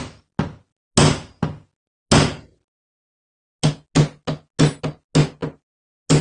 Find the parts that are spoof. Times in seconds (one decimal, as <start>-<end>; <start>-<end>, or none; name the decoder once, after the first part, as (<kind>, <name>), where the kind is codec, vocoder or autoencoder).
none

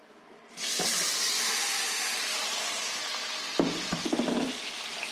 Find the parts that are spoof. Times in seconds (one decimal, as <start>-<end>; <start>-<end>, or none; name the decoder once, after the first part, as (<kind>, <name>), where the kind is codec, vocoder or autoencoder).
0.0-3.1 (vocoder, BigVGAN v2)